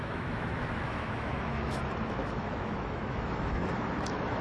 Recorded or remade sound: remade